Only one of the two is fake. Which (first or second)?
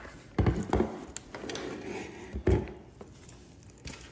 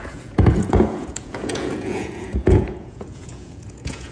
second